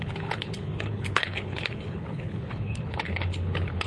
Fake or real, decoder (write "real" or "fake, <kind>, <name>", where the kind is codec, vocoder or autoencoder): fake, codec, HILCodec